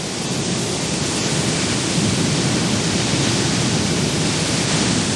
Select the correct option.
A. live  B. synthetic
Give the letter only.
A